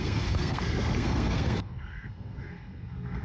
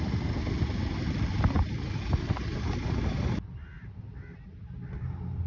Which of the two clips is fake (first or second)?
first